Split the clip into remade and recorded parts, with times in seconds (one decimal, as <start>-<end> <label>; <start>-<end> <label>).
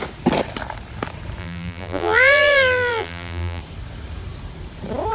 0.0-1.4 recorded; 1.4-3.6 remade; 3.6-5.1 recorded